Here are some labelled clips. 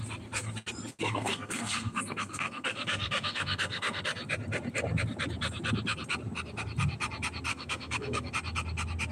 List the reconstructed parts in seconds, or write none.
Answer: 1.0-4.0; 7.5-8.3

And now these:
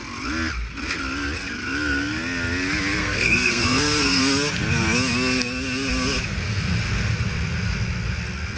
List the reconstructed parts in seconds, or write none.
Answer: 3.0-4.2

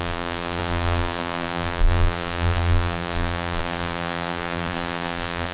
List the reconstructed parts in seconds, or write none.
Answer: 0.0-5.5